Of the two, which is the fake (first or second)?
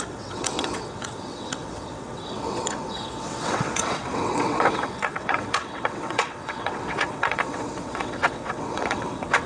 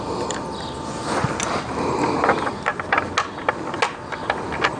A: first